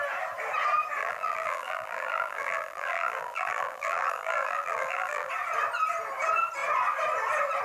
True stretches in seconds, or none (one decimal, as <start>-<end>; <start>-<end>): 0.0-1.0; 5.3-7.6